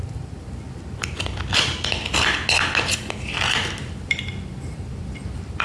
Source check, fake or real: real